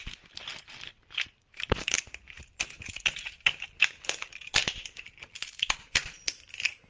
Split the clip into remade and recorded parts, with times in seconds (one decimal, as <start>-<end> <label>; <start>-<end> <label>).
0.0-0.5 recorded; 0.5-2.4 remade; 2.4-4.6 recorded; 4.6-6.2 remade; 6.2-6.9 recorded